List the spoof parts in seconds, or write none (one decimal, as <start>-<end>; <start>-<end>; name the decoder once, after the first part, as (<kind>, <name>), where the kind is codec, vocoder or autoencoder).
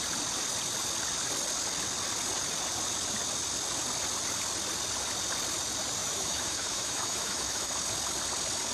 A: 6.0-7.7 (autoencoder, DAC-VAE)